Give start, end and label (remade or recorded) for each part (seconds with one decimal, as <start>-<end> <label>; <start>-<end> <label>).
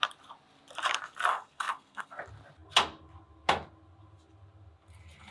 0.0-1.3 recorded; 1.3-2.2 remade; 2.2-5.3 recorded